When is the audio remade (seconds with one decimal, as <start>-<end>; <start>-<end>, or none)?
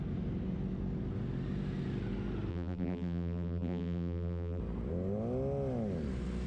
2.5-4.6